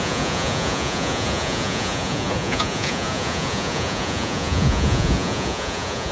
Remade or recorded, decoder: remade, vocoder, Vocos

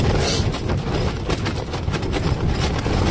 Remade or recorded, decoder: recorded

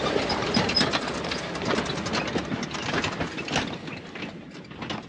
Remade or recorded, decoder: recorded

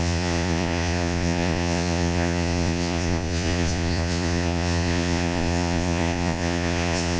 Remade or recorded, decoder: remade, vocoder, Vocos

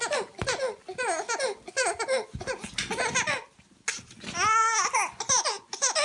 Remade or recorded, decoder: recorded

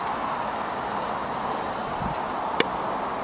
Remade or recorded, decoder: recorded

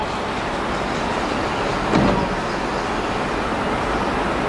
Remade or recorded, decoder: recorded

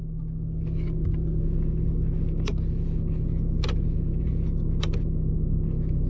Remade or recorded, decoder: recorded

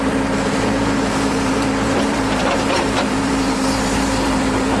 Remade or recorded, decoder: remade, vocoder, BigVGAN v2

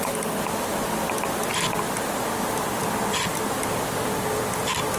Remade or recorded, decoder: recorded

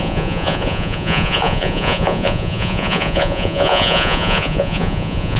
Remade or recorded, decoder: remade, vocoder, Vocos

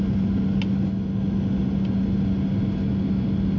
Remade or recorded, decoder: recorded